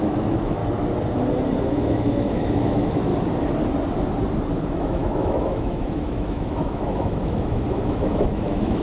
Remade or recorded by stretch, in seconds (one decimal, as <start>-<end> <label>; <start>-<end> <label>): 0.0-0.6 remade; 0.6-1.6 recorded; 1.6-3.1 remade; 3.1-4.5 recorded; 4.5-8.8 remade